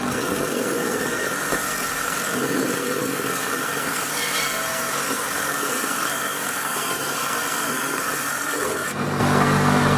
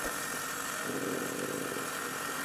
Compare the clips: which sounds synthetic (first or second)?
first